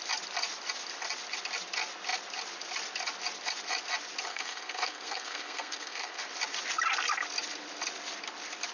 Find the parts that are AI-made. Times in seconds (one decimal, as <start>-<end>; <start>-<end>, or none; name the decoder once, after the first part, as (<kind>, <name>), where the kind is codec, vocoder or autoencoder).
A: 4.3-6.2 (codec, SNAC)